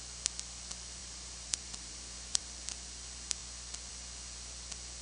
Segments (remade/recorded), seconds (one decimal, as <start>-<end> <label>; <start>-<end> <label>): 0.0-1.0 recorded; 1.0-2.4 remade; 2.4-5.0 recorded